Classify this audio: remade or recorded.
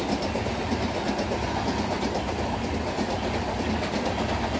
recorded